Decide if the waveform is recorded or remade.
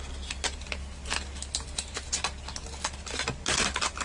recorded